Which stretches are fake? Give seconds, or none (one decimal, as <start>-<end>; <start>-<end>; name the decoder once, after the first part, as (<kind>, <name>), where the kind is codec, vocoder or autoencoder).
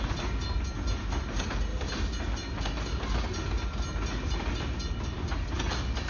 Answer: none